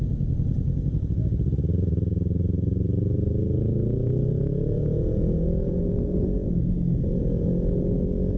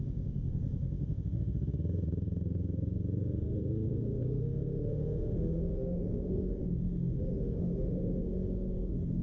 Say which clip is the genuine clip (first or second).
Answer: first